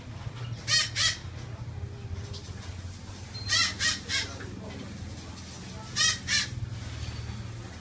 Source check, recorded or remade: recorded